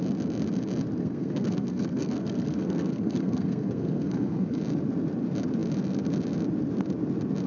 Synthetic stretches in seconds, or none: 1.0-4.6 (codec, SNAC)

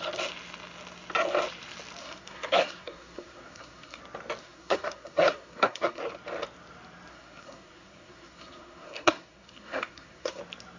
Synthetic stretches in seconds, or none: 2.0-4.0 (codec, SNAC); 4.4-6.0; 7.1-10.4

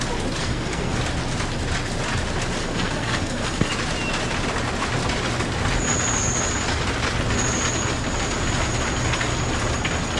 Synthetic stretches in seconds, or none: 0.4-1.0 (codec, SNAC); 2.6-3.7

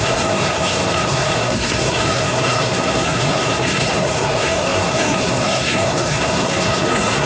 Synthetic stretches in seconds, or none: 0.0-7.3 (codec, SNAC)